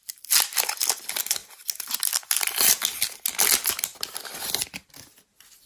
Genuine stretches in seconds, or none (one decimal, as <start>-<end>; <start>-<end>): 0.0-5.7